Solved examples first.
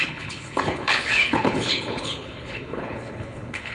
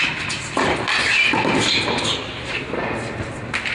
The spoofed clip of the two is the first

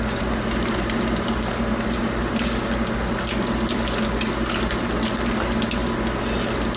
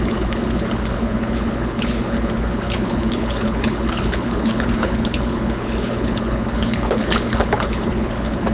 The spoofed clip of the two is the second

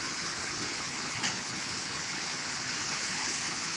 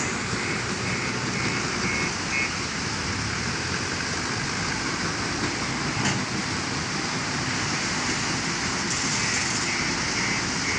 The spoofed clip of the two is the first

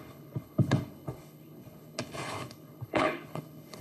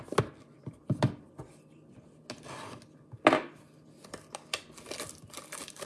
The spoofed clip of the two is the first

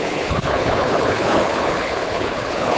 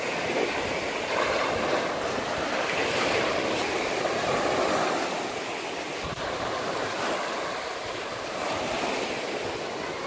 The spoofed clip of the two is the first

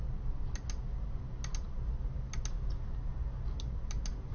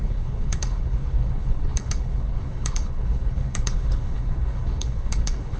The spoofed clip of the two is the second